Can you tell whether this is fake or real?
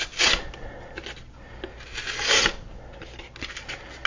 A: real